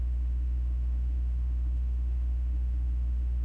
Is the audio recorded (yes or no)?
no